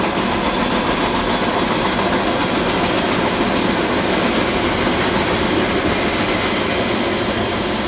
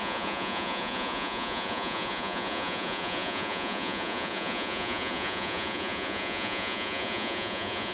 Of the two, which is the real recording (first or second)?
first